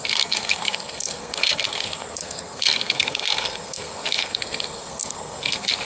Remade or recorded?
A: remade